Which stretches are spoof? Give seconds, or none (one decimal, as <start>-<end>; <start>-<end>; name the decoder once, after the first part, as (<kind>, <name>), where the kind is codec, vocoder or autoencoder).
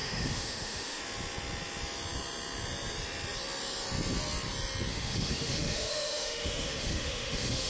0.0-1.0 (autoencoder, DAC-VAE); 4.9-7.7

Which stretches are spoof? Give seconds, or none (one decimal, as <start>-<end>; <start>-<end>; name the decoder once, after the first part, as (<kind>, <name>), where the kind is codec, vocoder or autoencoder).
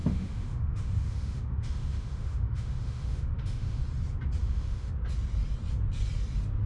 0.0-3.8 (autoencoder, DAC-VAE); 4.4-4.9